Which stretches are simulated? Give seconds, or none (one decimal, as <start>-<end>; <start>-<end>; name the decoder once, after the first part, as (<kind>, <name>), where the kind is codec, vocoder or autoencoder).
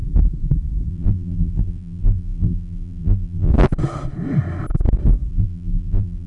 0.9-3.5 (vocoder, BigVGAN v2); 5.3-6.3